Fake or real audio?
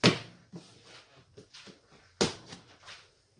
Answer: real